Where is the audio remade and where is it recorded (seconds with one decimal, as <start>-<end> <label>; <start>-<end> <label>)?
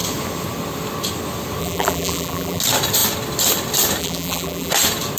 0.0-1.6 recorded; 1.6-2.6 remade; 2.6-4.0 recorded; 4.0-4.7 remade; 4.7-5.2 recorded